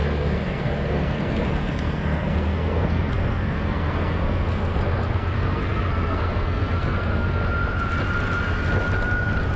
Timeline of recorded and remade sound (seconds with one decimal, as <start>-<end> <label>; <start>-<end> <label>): 0.0-7.4 remade; 7.4-9.6 recorded